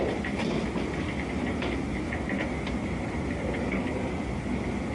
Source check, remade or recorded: recorded